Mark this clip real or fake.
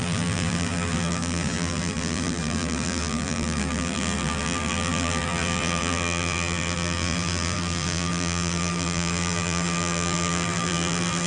fake